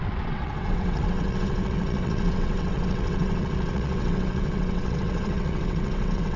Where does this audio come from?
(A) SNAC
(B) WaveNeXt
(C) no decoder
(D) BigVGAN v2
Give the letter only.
B